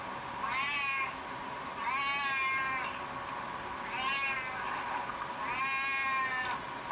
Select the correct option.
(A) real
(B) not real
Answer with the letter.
A